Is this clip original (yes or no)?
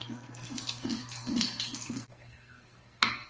no